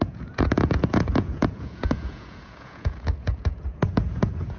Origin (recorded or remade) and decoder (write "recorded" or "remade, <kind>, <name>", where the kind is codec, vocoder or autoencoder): remade, vocoder, Vocos